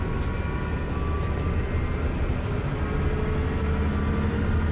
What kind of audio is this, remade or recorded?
recorded